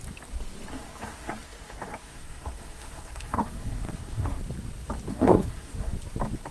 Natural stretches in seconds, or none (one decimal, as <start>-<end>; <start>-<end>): 0.0-0.7; 4.4-5.1; 5.9-6.5